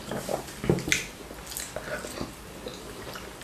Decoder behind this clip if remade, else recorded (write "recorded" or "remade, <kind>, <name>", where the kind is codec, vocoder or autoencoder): recorded